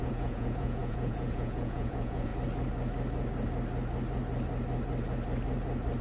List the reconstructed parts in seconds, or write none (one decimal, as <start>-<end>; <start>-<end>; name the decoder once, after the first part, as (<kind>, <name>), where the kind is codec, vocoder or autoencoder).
0.0-2.3 (vocoder, Vocos)

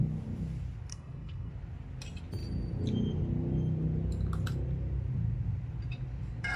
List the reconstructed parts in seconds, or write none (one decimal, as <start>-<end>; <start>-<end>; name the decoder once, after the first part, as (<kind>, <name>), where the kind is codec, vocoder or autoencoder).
0.9-1.5 (codec, SNAC)